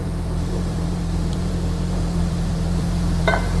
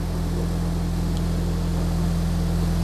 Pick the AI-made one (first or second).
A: first